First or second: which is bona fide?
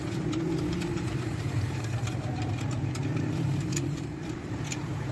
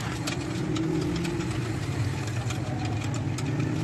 second